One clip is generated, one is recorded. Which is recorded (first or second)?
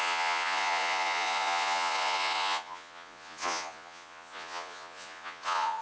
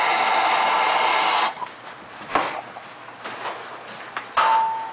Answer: second